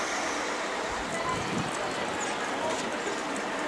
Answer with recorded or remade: recorded